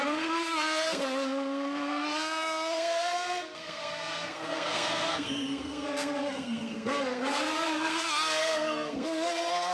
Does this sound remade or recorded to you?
remade